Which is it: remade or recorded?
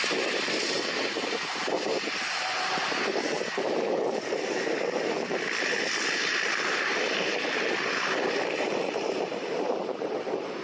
remade